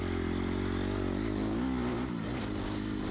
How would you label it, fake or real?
real